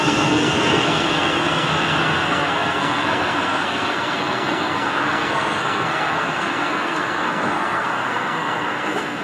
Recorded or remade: remade